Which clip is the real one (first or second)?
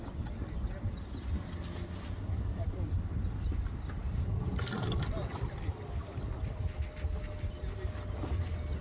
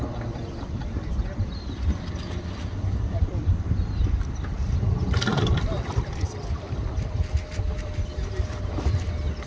first